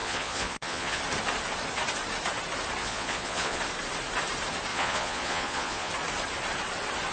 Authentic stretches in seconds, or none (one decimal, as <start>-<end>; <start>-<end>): 1.0-2.8; 3.6-4.7; 5.9-7.1